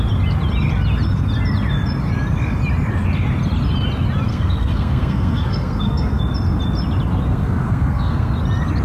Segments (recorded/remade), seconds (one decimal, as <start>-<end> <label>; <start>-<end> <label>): 0.0-4.3 recorded; 4.3-6.2 remade; 6.2-7.3 recorded; 7.3-8.3 remade; 8.3-8.8 recorded